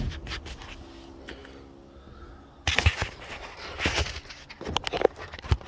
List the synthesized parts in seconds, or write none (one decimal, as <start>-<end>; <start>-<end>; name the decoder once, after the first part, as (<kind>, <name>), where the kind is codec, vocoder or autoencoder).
none